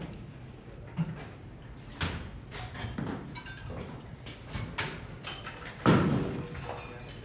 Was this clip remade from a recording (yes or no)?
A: no